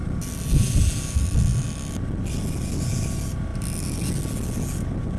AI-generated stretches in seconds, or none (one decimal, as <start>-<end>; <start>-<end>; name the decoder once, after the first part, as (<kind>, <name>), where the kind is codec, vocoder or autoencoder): 3.5-4.1 (vocoder, BigVGAN v2)